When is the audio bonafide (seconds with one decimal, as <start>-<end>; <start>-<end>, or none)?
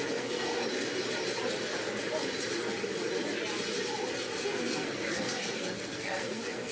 0.6-4.6